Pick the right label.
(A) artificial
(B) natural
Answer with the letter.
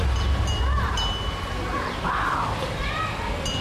B